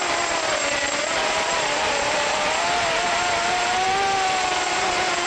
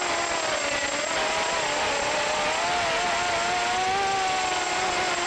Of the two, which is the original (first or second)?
second